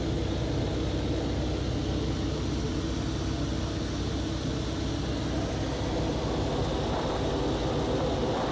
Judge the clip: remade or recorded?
recorded